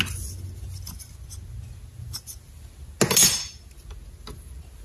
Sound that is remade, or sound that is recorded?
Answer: recorded